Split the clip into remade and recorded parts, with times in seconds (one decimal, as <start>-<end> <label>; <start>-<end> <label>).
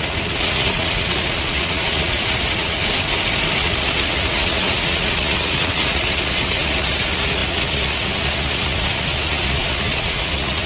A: 0.0-2.8 remade; 2.8-3.6 recorded; 3.6-10.7 remade